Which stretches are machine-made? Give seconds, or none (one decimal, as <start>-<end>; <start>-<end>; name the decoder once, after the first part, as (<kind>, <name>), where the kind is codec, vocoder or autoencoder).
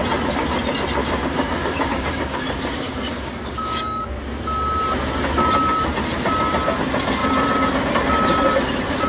1.0-4.1 (codec, DAC)